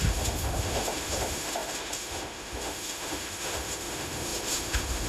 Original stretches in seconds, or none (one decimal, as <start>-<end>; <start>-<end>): none